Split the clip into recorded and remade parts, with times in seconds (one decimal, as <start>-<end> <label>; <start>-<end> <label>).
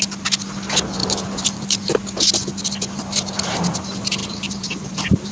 0.0-1.0 recorded; 1.0-1.9 remade; 1.9-4.2 recorded; 4.2-5.3 remade